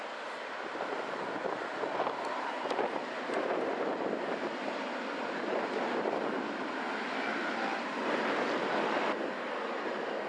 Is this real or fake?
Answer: real